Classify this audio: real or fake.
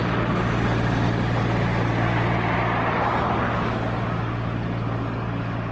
real